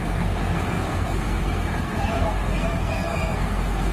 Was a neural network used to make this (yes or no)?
yes